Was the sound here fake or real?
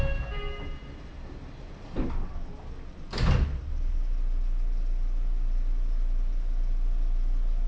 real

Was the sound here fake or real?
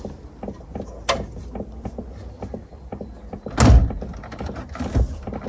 real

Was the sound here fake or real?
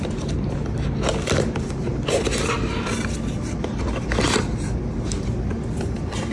real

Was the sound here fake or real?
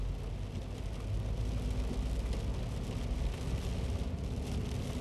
real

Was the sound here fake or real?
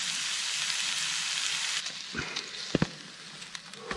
real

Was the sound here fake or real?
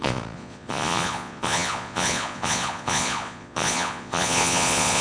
fake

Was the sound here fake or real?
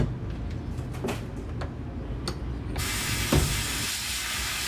real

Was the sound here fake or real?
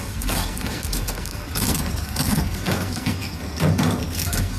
fake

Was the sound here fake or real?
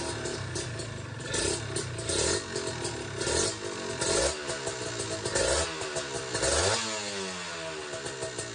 real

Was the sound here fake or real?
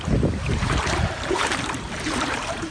fake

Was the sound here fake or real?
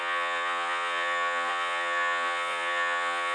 fake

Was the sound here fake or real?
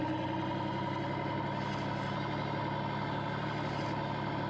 real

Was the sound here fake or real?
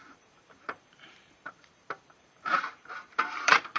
fake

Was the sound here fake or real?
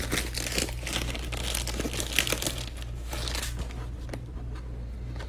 real